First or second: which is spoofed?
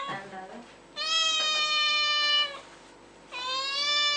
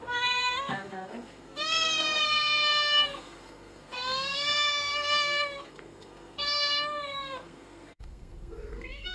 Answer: second